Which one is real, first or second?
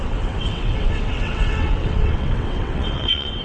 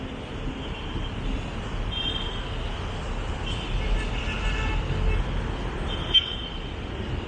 second